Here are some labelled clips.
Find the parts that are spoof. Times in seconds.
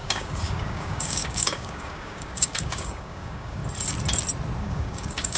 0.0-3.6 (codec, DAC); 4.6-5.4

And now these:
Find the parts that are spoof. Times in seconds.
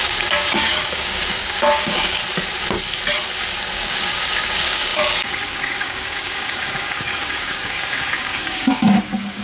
0.0-2.2 (codec, DAC); 3.7-9.4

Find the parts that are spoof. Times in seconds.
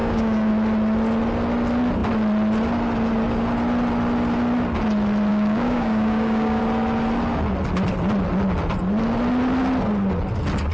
0.0-0.5 (codec, DAC); 5.3-6.6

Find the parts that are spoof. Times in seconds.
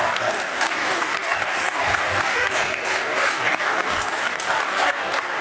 0.0-5.4 (codec, DAC)